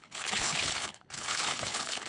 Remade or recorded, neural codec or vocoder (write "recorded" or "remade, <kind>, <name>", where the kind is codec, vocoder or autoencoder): remade, codec, HILCodec